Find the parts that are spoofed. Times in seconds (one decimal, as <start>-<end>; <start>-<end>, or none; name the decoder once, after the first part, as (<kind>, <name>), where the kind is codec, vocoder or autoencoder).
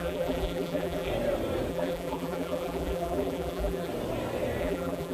0.0-1.1 (vocoder, BigVGAN v2); 1.7-3.9; 4.6-5.1